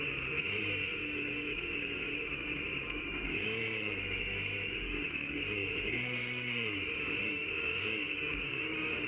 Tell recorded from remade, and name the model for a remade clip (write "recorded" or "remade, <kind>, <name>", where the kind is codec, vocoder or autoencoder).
remade, autoencoder, DAC-VAE